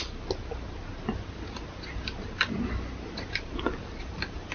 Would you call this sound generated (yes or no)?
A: no